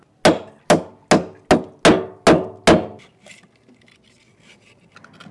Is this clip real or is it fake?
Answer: real